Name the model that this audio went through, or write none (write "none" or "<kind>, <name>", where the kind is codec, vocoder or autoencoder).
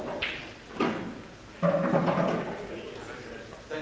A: none